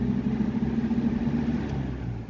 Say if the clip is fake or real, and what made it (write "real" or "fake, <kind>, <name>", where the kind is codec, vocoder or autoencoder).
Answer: real